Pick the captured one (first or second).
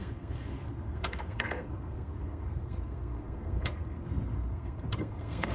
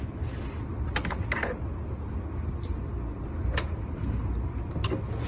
second